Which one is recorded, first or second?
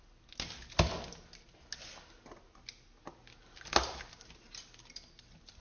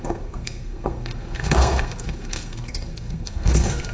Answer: first